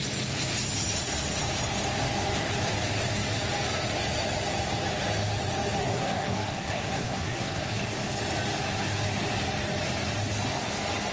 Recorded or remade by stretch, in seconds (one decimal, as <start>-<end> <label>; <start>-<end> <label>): 0.0-5.8 recorded; 5.8-7.7 remade; 7.7-11.1 recorded